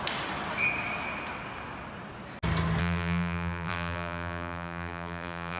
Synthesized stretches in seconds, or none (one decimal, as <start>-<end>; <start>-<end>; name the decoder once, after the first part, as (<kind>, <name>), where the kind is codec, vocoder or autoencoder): 2.8-5.6 (vocoder, BigVGAN v2)